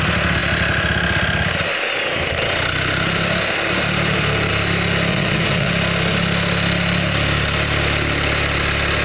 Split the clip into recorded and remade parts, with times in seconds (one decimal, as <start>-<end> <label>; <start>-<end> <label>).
0.0-5.1 recorded; 5.1-5.7 remade; 5.7-9.0 recorded